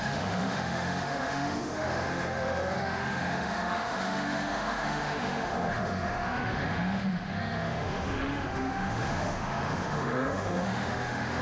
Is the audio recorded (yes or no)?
no